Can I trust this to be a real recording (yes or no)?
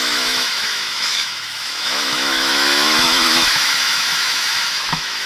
no